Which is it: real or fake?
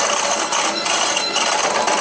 real